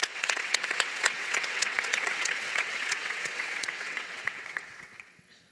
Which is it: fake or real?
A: fake